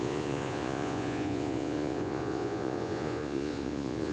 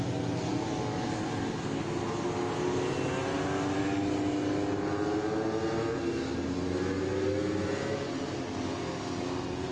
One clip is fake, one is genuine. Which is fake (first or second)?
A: first